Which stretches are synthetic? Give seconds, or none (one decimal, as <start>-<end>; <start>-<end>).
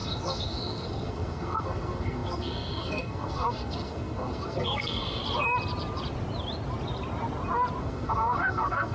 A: 0.0-5.2; 7.8-8.9